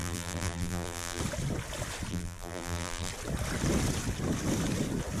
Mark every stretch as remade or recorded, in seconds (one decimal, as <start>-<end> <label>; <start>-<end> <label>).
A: 0.0-1.2 remade; 1.2-2.1 recorded; 2.1-3.1 remade; 3.1-5.2 recorded